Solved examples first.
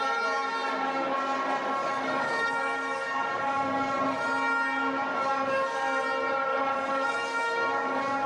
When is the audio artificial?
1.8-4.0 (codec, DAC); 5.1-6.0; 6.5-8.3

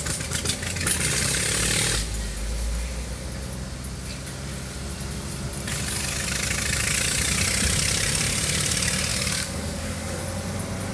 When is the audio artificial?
9.1-10.2 (codec, DAC)

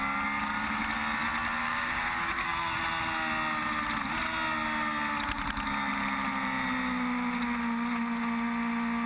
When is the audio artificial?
1.6-2.5 (codec, DAC)